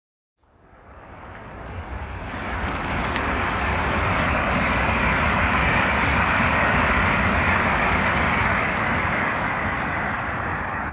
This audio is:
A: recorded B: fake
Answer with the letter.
B